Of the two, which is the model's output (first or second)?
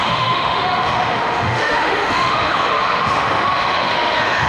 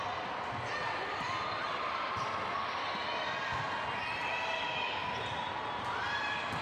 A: first